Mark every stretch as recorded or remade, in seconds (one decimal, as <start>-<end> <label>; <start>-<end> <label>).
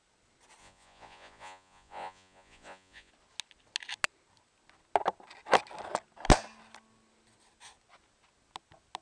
0.0-0.6 recorded; 0.6-3.1 remade; 3.1-9.0 recorded